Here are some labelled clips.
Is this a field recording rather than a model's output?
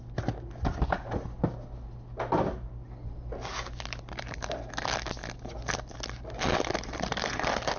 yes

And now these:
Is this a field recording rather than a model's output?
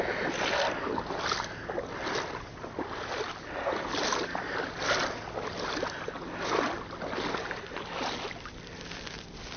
yes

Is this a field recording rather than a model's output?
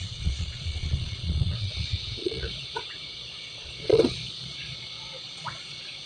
no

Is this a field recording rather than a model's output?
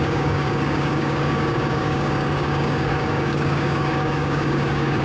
no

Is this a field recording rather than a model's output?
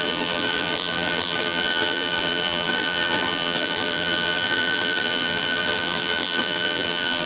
no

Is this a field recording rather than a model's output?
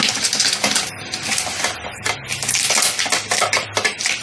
yes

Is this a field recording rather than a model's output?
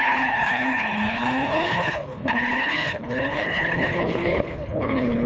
no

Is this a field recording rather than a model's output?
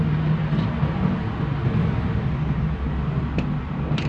yes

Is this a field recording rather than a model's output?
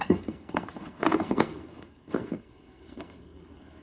no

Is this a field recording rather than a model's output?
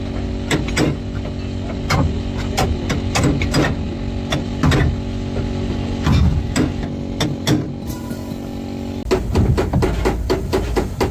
yes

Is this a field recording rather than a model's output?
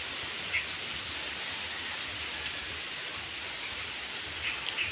yes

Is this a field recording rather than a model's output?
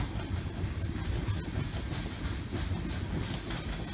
yes